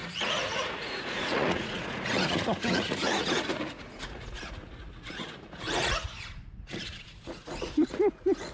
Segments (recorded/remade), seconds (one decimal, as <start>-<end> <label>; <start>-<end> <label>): 0.0-8.5 remade